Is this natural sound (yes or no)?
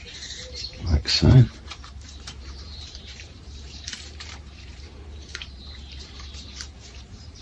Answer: no